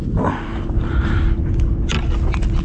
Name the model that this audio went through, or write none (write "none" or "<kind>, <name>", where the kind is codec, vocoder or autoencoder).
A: none